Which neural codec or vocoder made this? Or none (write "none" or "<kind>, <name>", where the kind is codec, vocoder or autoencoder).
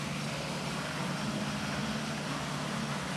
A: none